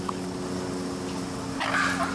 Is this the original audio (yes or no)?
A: yes